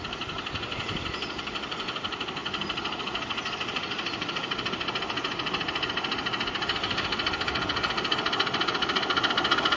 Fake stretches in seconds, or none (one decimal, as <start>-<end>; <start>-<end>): none

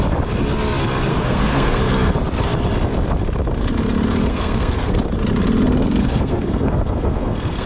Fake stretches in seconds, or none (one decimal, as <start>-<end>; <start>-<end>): 1.1-1.8; 4.3-4.9; 6.0-7.7